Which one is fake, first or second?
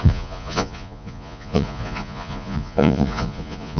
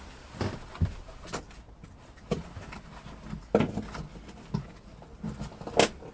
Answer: first